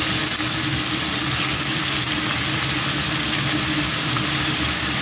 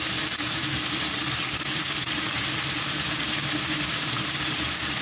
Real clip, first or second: first